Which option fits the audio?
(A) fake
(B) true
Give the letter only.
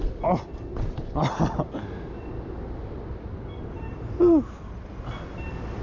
B